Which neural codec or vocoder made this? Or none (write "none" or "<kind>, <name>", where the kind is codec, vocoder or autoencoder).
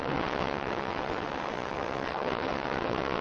vocoder, WaveNeXt